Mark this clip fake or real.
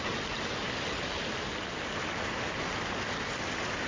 real